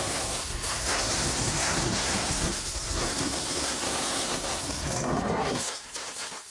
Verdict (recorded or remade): remade